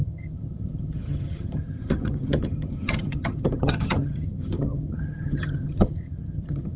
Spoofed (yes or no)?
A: yes